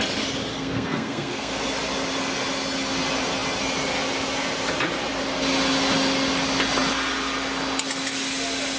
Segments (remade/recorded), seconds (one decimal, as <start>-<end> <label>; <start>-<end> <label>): 0.0-0.5 recorded; 0.5-1.6 remade; 1.6-8.8 recorded